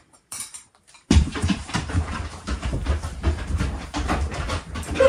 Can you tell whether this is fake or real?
fake